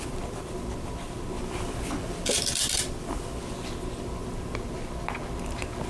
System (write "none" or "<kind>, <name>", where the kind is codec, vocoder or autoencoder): none